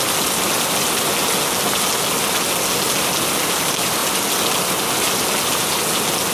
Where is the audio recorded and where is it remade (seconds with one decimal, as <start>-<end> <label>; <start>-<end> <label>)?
0.0-6.3 recorded